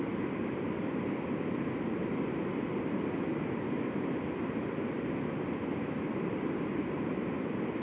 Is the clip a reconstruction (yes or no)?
no